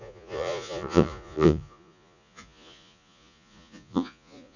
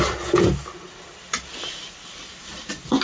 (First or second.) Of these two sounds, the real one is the second